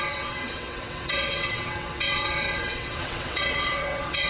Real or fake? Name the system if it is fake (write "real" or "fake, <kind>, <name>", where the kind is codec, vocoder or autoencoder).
fake, vocoder, WaveNeXt